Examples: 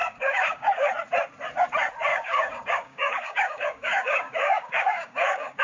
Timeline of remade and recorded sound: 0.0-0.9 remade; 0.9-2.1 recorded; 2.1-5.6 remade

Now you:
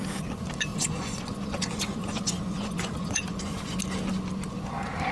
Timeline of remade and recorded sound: 0.0-0.7 recorded; 0.7-3.8 remade; 3.8-5.1 recorded

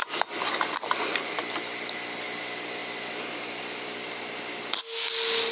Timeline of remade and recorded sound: 0.0-5.5 recorded

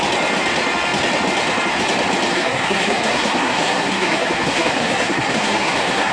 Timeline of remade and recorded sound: 0.0-2.3 recorded; 2.3-6.1 remade

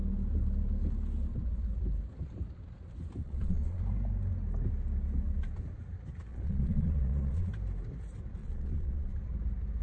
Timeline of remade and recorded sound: 0.0-3.2 recorded; 3.2-3.8 remade; 3.8-6.3 recorded; 6.3-7.5 remade; 7.5-8.4 recorded; 8.4-9.1 remade; 9.1-9.8 recorded

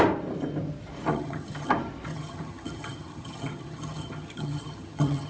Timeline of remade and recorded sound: 0.0-1.1 recorded; 1.1-1.7 remade; 1.7-2.1 recorded; 2.1-5.3 remade

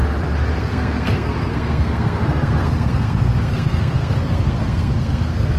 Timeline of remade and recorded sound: 0.0-0.6 recorded; 0.6-5.6 remade

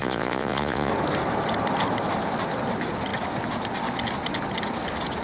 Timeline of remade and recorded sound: 0.0-0.9 remade; 0.9-5.2 recorded